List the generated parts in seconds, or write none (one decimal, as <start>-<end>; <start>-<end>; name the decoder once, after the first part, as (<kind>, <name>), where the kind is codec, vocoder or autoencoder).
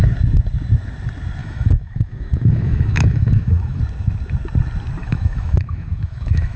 1.4-3.8 (autoencoder, DAC-VAE); 5.0-6.6